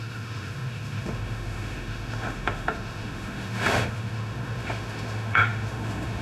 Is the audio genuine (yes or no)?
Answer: no